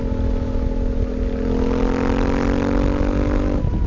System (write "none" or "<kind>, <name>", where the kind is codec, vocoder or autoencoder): none